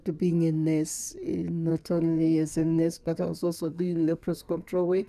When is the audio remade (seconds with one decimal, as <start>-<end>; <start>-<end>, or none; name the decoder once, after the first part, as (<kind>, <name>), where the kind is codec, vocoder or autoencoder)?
1.7-5.1 (codec, SNAC)